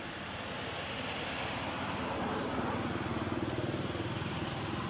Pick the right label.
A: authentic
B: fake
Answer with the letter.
A